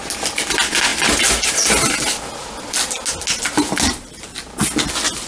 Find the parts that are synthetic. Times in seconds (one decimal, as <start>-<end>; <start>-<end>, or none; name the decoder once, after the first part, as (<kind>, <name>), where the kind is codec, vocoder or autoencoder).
none